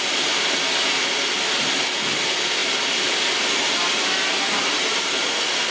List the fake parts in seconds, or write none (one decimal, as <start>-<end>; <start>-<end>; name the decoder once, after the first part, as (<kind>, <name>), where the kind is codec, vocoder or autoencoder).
none